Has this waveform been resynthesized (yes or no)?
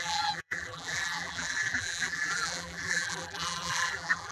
yes